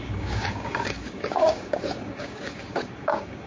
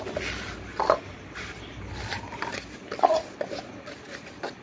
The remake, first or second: first